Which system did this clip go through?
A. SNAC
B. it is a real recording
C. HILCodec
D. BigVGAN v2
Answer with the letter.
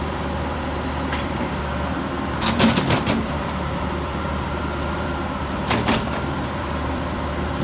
D